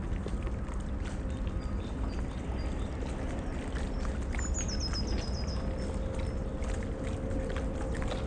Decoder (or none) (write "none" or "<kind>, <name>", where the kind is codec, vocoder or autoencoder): none